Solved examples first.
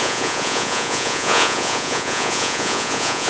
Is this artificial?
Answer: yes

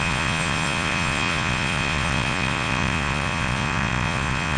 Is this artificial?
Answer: yes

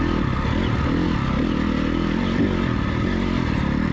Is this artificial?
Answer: no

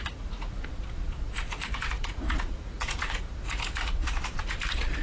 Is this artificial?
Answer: yes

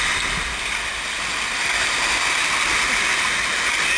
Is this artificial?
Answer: no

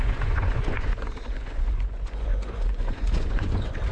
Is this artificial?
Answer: yes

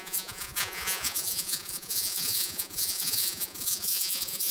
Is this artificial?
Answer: yes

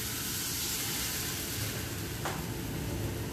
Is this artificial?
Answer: no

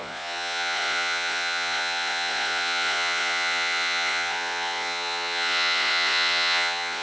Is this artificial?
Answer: yes